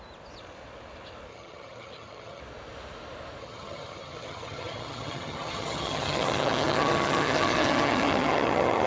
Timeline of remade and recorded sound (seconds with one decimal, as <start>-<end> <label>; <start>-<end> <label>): 0.0-1.3 recorded; 1.3-2.4 remade; 2.4-3.4 recorded; 3.4-8.9 remade